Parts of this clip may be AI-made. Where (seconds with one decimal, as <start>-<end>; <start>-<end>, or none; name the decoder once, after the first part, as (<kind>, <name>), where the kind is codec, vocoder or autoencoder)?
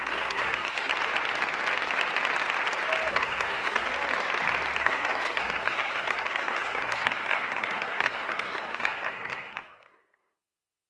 0.0-0.9 (codec, SNAC); 3.1-3.9; 4.8-10.9